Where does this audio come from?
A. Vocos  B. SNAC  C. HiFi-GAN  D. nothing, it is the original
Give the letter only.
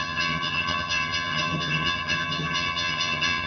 C